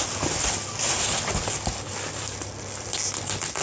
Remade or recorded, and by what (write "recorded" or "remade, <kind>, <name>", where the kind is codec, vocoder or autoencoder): recorded